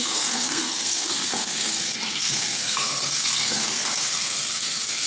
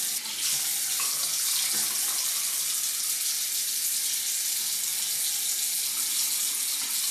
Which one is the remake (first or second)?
first